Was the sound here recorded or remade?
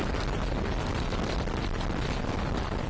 recorded